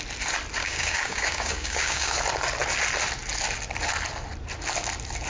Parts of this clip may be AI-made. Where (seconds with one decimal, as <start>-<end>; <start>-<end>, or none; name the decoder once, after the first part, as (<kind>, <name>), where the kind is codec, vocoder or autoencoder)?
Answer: 0.6-2.2 (codec, DAC)